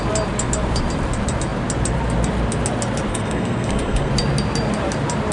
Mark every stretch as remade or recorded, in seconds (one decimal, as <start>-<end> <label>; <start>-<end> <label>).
0.0-3.1 recorded; 3.1-4.1 remade; 4.1-5.3 recorded